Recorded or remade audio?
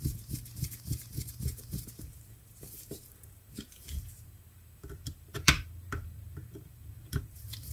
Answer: remade